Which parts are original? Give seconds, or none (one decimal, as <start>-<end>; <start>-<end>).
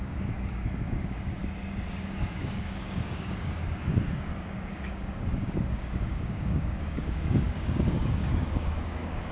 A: 1.4-1.9